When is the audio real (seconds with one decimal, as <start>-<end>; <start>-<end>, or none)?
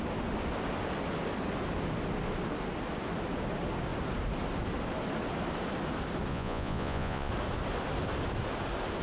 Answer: 0.0-6.3; 7.3-9.0